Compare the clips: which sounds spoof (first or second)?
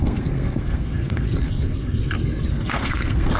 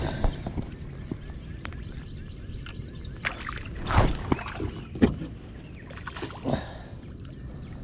first